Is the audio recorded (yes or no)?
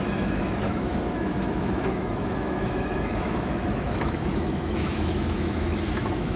no